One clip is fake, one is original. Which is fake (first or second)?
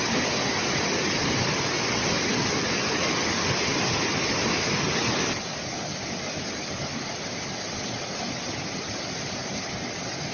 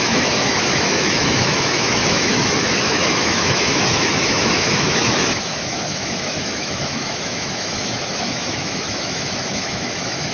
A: second